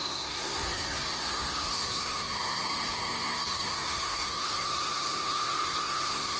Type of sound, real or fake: fake